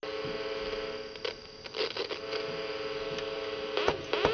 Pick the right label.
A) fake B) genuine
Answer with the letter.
B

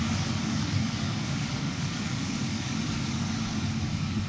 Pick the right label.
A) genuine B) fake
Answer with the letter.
B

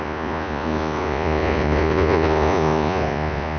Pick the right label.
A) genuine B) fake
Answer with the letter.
B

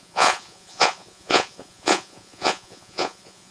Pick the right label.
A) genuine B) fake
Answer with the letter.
B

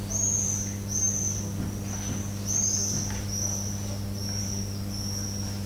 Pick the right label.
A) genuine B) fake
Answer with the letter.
A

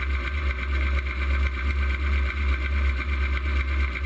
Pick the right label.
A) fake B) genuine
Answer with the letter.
B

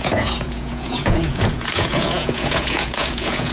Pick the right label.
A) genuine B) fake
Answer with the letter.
B